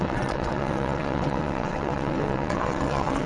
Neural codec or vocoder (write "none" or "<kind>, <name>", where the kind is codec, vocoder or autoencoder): vocoder, WaveNeXt